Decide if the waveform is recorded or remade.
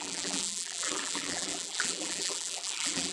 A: remade